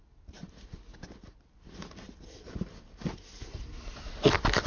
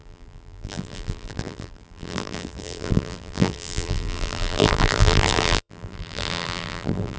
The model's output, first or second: second